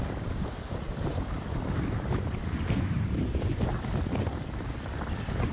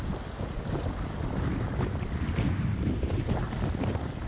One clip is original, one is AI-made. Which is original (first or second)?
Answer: second